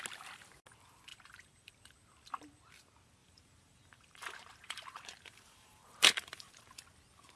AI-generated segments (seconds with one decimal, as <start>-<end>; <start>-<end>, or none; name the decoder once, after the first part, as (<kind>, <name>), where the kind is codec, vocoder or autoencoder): 1.1-1.7 (vocoder, BigVGAN v2); 3.2-6.7